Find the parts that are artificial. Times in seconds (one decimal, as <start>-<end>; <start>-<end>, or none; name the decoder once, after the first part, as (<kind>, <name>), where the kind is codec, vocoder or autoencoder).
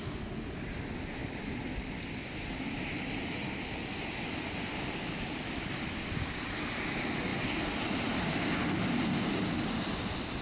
none